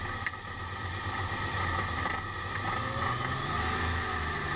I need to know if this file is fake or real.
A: real